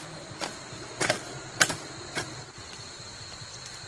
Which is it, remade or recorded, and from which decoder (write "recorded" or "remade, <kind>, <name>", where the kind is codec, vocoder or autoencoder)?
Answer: recorded